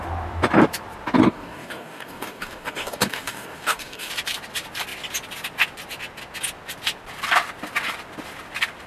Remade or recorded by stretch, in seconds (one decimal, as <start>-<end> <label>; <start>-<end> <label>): 0.0-1.2 recorded; 1.2-4.1 remade; 4.1-8.9 recorded